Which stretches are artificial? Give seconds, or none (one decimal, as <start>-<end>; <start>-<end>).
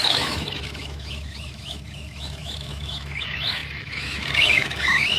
0.0-5.2